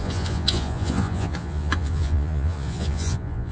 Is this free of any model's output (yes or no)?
no